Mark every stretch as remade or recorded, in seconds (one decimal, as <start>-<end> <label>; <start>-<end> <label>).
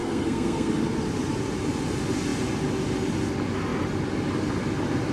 0.0-0.7 remade; 0.7-5.1 recorded